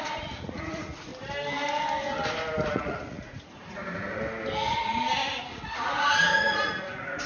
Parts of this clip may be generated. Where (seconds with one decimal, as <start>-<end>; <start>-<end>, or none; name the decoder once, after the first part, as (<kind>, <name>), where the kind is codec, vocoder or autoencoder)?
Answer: 0.0-1.1 (vocoder, Vocos); 2.7-3.8; 5.5-7.3